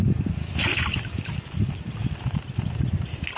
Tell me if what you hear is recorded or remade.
recorded